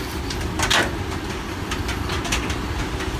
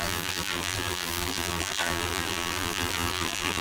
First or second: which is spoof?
second